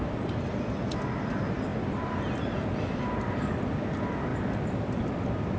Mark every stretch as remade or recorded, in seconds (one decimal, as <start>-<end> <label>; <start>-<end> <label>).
0.0-5.6 recorded